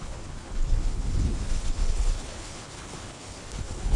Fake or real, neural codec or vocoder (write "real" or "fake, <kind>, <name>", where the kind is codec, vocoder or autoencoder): fake, codec, HILCodec